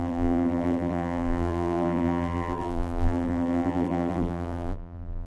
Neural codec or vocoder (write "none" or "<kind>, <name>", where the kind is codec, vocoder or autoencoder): vocoder, BigVGAN v2